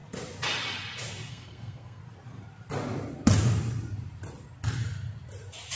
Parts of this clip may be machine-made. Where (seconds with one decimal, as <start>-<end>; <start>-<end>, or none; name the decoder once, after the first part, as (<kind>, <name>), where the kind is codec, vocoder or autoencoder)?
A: 1.3-2.0 (codec, SNAC)